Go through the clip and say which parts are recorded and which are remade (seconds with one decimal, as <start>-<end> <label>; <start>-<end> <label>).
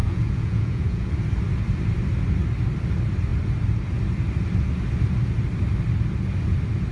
0.0-1.1 remade; 1.1-6.9 recorded